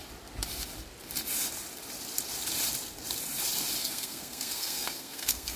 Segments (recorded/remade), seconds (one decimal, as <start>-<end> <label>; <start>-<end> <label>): 0.0-3.8 recorded; 3.8-5.6 remade